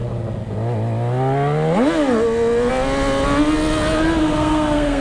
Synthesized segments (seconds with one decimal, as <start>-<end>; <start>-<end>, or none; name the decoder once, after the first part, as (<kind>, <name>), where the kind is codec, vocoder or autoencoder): 4.2-5.0 (codec, SNAC)